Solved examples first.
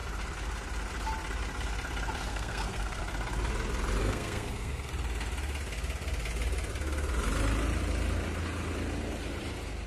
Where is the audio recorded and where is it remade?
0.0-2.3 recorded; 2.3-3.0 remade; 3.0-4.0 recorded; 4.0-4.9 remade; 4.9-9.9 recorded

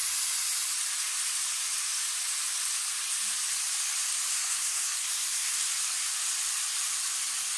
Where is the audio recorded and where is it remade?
0.0-4.3 recorded; 4.3-5.7 remade; 5.7-7.6 recorded

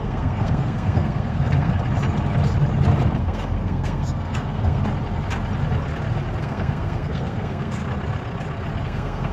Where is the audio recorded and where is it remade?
0.0-1.7 remade; 1.7-3.2 recorded; 3.2-4.8 remade; 4.8-6.4 recorded; 6.4-7.8 remade; 7.8-8.8 recorded; 8.8-9.3 remade

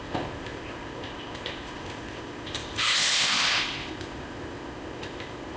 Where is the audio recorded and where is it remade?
0.0-5.6 remade

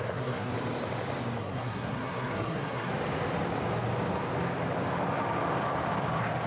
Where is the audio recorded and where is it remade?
0.0-0.5 remade; 0.5-1.4 recorded; 1.4-2.9 remade; 2.9-6.5 recorded